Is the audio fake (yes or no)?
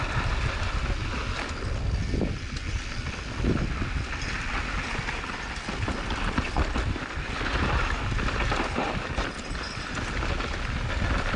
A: no